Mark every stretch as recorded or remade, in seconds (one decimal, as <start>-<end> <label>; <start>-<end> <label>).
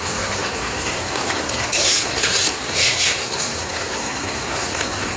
0.0-5.2 remade